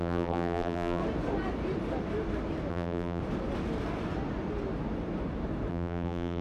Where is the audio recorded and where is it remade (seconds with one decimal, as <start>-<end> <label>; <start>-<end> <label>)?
0.0-1.0 remade; 1.0-2.7 recorded; 2.7-3.2 remade; 3.2-5.7 recorded; 5.7-6.4 remade